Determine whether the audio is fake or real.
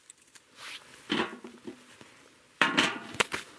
fake